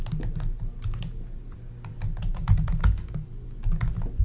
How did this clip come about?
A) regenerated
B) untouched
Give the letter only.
B